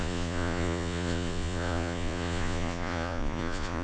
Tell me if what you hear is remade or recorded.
remade